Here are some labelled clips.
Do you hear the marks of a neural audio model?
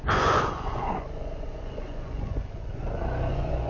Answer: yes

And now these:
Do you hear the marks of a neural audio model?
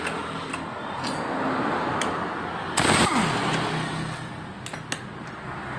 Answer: no